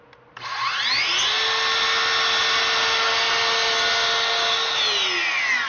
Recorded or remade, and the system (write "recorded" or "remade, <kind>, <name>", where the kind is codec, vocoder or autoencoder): recorded